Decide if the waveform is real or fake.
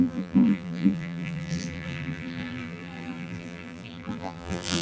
fake